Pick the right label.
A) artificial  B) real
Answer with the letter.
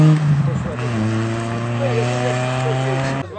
B